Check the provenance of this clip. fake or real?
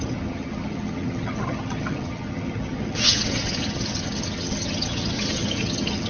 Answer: fake